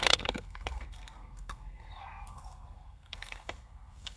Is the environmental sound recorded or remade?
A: remade